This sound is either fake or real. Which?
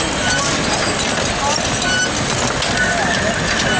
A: real